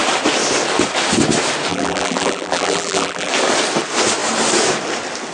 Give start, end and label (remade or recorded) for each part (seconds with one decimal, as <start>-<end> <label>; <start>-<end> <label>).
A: 0.0-1.7 recorded; 1.7-3.3 remade; 3.3-5.3 recorded